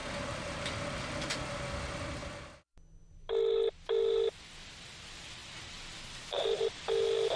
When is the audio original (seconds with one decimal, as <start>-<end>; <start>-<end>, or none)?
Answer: 0.0-7.4